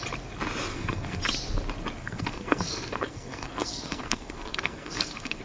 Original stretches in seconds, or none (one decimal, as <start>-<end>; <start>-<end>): 0.0-0.7; 1.2-2.0